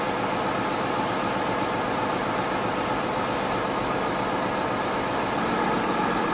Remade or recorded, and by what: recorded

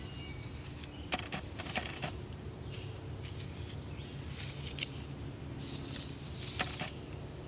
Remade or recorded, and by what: recorded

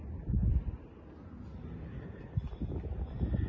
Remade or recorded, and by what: recorded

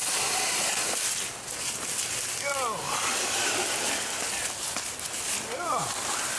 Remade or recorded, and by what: recorded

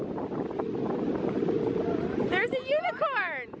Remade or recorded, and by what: recorded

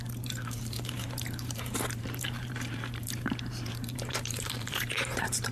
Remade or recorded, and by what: remade, vocoder, BigVGAN v2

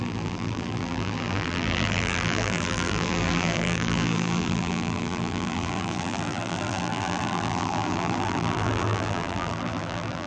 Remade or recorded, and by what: remade, vocoder, BigVGAN v2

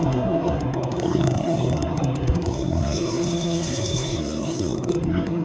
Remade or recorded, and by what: remade, codec, SNAC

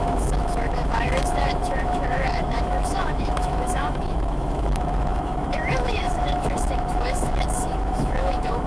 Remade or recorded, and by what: remade, autoencoder, DAC-VAE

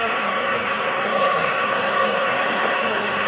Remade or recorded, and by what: remade, codec, SNAC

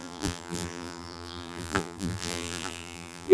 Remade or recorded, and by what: remade, vocoder, BigVGAN v2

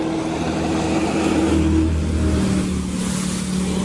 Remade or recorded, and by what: recorded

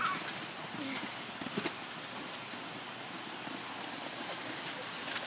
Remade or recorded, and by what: recorded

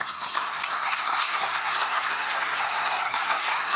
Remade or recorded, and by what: remade, codec, SNAC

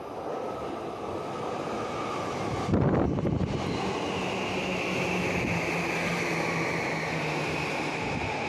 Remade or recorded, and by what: recorded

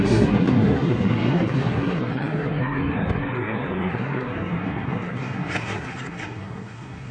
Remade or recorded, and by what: remade, codec, SNAC